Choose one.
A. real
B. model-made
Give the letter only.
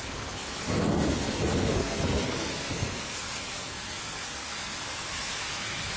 B